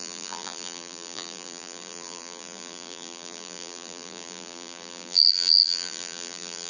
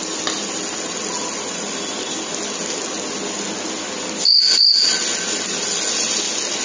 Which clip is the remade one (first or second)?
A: first